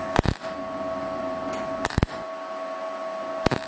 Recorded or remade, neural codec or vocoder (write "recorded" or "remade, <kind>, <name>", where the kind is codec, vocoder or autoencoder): recorded